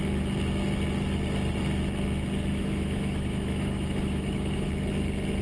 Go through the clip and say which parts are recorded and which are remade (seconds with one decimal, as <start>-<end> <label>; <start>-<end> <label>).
0.0-2.5 recorded; 2.5-4.7 remade; 4.7-5.4 recorded